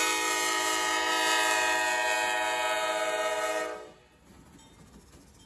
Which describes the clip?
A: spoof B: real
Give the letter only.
B